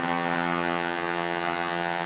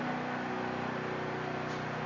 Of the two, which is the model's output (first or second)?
first